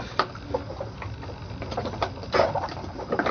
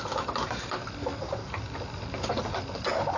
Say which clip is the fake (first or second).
first